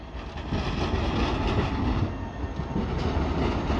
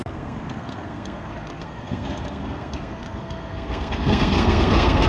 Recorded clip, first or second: first